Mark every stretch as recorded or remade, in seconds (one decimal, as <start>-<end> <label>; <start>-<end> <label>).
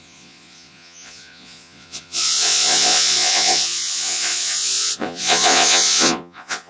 0.0-6.7 remade